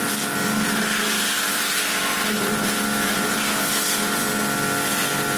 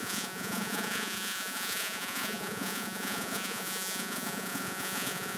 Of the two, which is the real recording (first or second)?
first